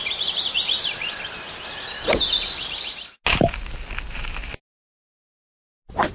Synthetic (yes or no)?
no